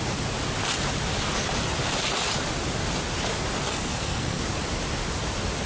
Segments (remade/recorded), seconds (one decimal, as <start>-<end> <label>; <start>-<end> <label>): 0.0-3.7 recorded; 3.7-4.4 remade; 4.4-5.7 recorded